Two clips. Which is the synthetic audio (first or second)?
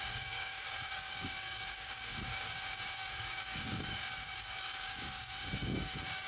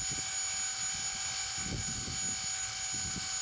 first